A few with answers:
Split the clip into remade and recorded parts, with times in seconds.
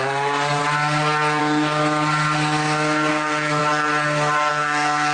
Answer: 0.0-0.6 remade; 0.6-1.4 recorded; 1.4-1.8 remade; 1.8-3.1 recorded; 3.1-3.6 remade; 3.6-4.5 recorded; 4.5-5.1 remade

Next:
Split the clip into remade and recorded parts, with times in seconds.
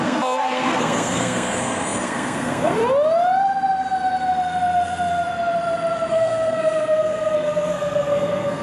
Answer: 0.0-2.8 remade; 2.8-6.1 recorded; 6.1-8.6 remade